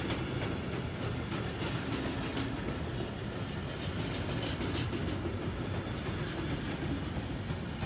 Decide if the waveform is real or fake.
real